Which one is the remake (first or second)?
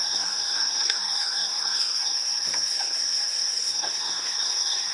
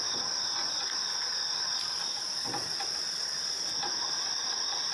first